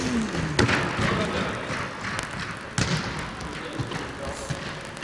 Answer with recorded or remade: recorded